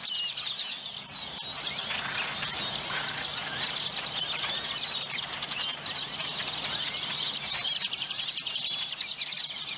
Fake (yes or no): no